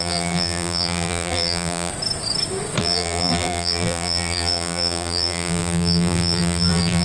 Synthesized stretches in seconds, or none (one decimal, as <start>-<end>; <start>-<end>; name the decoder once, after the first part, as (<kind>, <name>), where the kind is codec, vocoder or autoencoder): 0.0-1.9 (vocoder, BigVGAN v2); 2.8-7.0